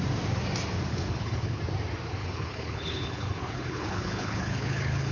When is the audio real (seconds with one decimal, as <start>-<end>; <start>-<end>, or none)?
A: 0.0-0.9; 1.6-2.2

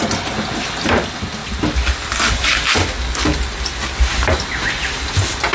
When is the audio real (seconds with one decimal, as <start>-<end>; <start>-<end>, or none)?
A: 0.0-5.5

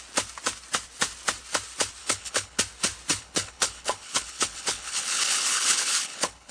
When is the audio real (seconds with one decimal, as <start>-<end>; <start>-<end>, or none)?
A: 0.0-2.0; 2.6-3.2

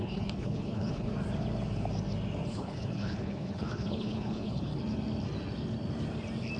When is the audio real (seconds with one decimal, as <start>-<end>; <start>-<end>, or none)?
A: 1.1-2.5; 4.7-6.6